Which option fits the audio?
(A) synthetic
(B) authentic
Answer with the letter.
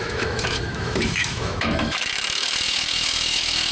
A